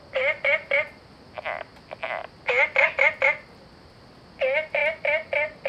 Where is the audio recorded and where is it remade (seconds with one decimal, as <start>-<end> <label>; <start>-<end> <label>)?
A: 0.0-5.7 recorded